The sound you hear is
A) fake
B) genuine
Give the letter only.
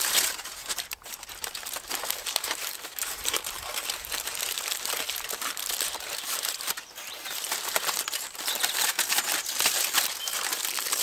A